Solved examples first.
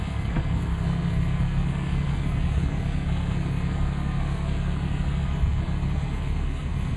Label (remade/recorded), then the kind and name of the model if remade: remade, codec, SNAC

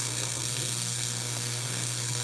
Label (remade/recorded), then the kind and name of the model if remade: remade, codec, SNAC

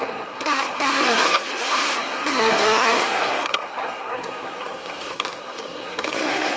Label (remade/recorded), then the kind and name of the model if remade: remade, codec, SNAC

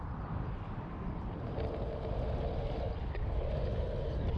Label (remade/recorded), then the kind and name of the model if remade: recorded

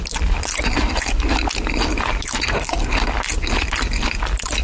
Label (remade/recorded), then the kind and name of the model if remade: recorded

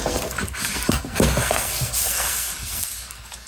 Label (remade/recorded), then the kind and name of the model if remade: remade, codec, SNAC